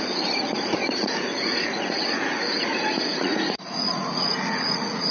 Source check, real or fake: fake